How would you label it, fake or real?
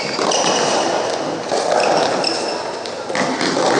real